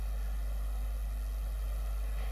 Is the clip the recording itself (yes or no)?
yes